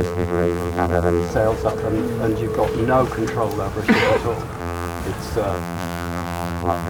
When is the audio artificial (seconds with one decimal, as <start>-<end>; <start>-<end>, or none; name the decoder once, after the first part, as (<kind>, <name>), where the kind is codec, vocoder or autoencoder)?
0.0-1.3 (vocoder, BigVGAN v2); 4.6-5.0; 5.5-6.9